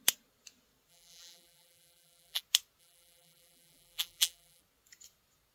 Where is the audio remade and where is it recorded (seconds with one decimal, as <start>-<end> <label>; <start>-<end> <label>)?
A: 0.0-0.9 recorded; 0.9-2.4 remade; 2.4-2.8 recorded; 2.8-4.6 remade; 4.6-5.5 recorded